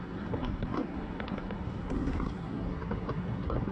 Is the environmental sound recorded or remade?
remade